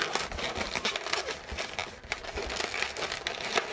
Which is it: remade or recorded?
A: recorded